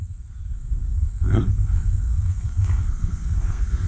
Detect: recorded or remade remade